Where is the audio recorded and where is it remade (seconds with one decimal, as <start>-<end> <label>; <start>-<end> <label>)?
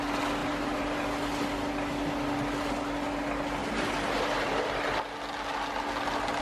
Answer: 0.0-0.4 recorded; 0.4-1.0 remade; 1.0-3.6 recorded; 3.6-5.0 remade; 5.0-6.4 recorded